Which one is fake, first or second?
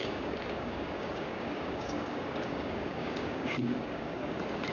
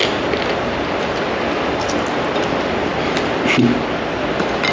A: first